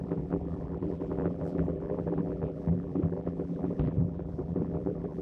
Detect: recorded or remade remade